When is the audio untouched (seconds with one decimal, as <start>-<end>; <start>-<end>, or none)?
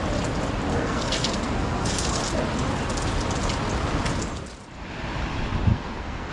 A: 0.0-0.7; 2.2-5.7